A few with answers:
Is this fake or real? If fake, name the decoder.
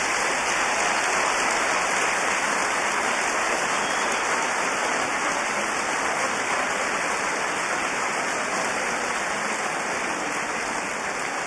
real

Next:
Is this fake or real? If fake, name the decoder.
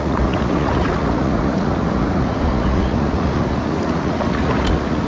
fake, vocoder, Vocos